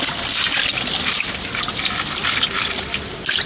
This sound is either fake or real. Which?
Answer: real